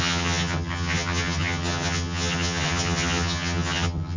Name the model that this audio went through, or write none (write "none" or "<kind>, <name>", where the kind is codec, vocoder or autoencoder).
vocoder, HiFi-GAN